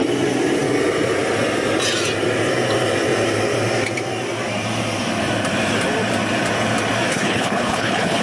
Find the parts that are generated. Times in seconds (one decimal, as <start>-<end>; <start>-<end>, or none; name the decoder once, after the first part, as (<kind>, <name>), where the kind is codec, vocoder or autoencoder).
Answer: 7.1-8.2 (codec, HILCodec)